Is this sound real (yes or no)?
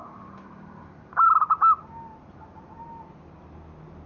yes